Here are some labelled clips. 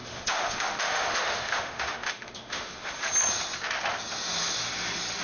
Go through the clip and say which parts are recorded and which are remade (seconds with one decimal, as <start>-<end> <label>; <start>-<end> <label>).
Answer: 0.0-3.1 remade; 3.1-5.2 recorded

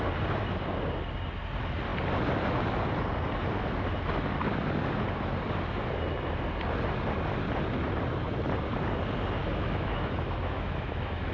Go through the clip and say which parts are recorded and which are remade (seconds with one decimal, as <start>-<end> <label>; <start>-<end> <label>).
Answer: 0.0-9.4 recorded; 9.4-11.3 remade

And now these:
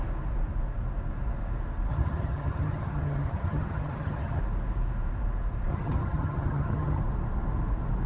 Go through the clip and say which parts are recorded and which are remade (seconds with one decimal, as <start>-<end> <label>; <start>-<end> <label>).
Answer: 0.0-1.9 recorded; 1.9-4.4 remade; 4.4-5.7 recorded; 5.7-7.0 remade; 7.0-8.1 recorded